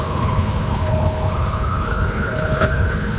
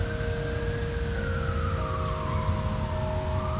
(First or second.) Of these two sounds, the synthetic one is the first